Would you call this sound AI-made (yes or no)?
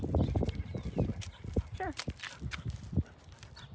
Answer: no